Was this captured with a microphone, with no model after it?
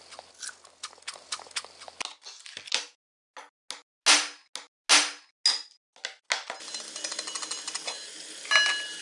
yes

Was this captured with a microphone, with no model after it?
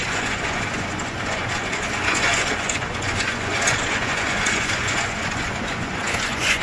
no